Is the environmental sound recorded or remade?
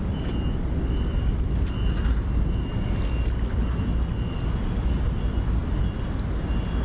recorded